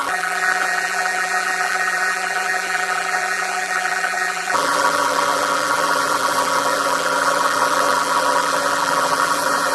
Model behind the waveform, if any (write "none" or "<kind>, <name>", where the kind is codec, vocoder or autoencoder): vocoder, BigVGAN v2